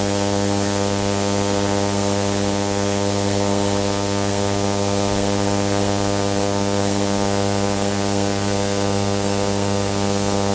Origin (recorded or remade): remade